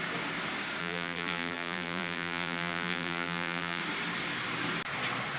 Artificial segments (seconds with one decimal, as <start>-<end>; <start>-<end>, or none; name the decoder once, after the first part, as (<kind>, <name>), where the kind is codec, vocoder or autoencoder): 0.8-3.8 (vocoder, BigVGAN v2)